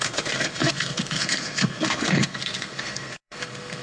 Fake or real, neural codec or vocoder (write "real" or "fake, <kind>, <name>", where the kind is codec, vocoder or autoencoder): fake, codec, SNAC